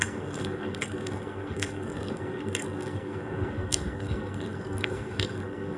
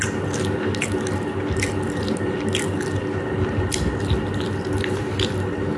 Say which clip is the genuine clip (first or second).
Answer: second